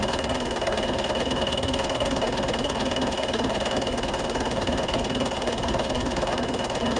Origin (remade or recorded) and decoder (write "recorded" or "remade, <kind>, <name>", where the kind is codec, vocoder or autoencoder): remade, codec, SNAC